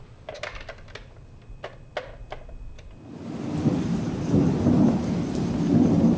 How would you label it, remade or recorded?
recorded